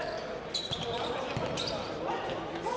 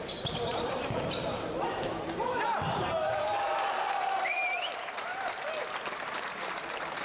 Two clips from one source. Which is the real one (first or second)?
first